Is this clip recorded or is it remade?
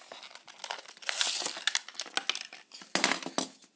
recorded